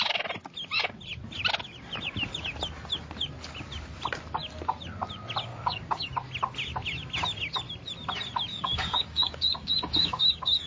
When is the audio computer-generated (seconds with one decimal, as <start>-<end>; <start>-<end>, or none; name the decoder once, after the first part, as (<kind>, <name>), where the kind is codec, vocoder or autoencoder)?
5.5-6.1 (codec, DAC); 8.5-10.7